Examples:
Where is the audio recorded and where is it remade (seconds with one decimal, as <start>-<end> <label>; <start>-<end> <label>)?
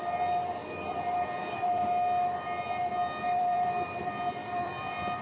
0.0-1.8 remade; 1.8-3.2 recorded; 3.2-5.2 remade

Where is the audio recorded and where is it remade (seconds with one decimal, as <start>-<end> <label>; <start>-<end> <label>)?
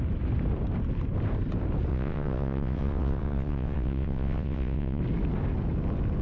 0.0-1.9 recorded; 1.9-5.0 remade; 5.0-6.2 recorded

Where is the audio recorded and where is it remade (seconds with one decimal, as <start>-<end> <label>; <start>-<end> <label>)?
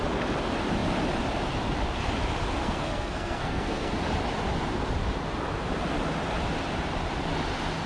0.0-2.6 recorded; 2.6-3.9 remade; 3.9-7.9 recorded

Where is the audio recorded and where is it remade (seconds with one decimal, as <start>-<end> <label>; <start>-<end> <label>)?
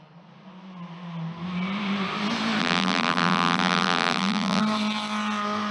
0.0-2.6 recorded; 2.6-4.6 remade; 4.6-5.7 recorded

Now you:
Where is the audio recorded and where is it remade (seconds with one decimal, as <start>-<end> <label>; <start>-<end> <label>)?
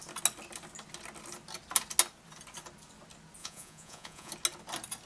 0.0-3.4 recorded; 3.4-4.3 remade; 4.3-5.1 recorded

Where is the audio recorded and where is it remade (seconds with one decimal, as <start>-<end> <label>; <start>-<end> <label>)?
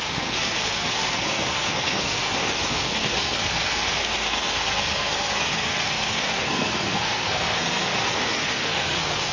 0.0-9.3 remade